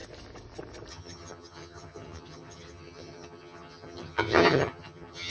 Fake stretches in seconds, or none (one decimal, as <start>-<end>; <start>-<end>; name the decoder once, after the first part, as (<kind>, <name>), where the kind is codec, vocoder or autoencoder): 0.9-5.3 (vocoder, HiFi-GAN)